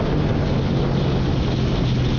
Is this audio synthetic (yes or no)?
no